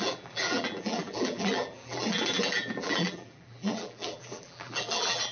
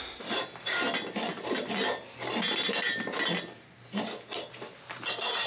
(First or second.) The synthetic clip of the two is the first